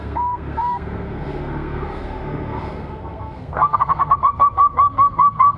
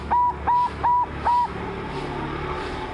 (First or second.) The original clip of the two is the second